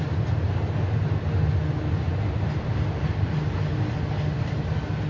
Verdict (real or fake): real